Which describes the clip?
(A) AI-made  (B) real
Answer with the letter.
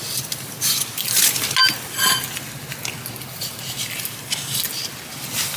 B